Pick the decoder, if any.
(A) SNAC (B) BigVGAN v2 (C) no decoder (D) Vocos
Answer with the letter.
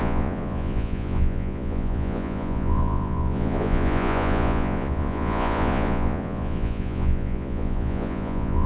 D